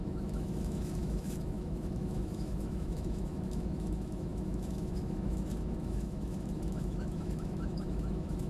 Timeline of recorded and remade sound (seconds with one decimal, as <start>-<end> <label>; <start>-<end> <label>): 0.0-8.5 remade